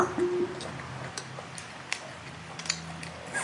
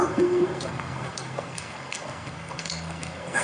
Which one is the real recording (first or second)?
first